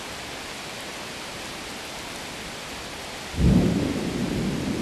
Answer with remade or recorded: recorded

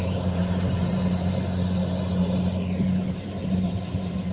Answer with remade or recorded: remade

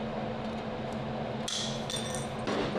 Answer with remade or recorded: recorded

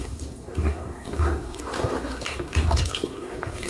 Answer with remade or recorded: remade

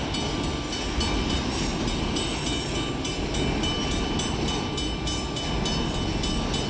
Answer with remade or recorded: recorded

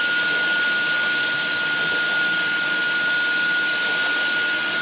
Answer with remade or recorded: recorded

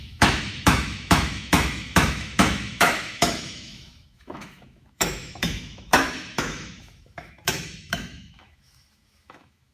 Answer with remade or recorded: remade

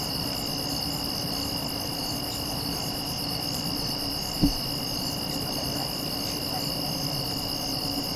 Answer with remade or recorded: recorded